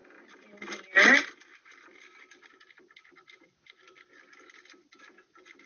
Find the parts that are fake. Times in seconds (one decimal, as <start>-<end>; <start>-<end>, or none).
none